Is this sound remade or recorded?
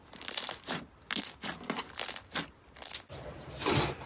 recorded